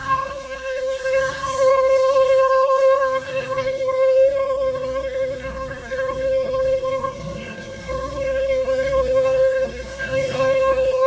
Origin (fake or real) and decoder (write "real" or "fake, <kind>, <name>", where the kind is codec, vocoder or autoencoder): fake, codec, SNAC